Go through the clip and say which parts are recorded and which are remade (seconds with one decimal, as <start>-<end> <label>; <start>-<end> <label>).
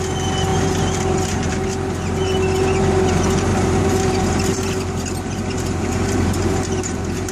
0.0-0.5 recorded; 0.5-1.5 remade; 1.5-3.5 recorded; 3.5-7.3 remade